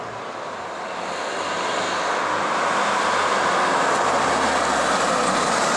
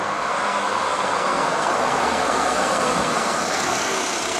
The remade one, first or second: second